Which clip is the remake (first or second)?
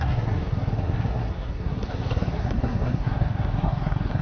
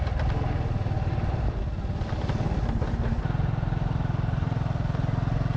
first